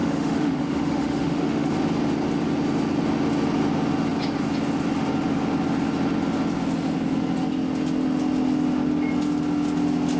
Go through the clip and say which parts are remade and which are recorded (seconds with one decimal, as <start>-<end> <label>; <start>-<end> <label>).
0.0-1.7 remade; 1.7-10.2 recorded